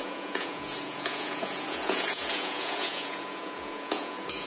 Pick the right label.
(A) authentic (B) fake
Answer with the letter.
B